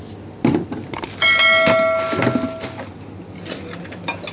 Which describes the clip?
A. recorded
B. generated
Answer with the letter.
A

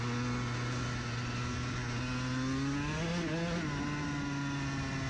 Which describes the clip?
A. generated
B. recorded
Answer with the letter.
B